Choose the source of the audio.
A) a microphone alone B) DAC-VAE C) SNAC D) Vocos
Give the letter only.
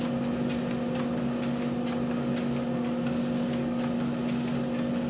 A